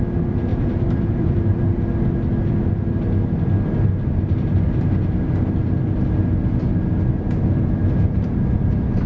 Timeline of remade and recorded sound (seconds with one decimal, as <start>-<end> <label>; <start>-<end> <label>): 0.0-0.5 recorded; 0.5-1.6 remade; 1.6-9.1 recorded